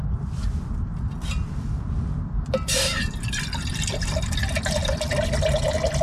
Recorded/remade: recorded